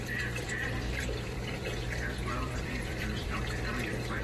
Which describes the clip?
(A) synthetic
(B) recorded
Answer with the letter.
A